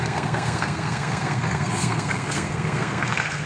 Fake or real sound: fake